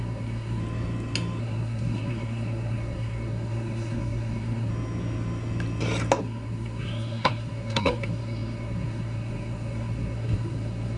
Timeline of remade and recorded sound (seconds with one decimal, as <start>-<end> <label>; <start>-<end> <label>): 0.0-0.6 remade; 0.6-1.4 recorded; 1.4-4.7 remade; 4.7-6.2 recorded; 6.2-11.0 remade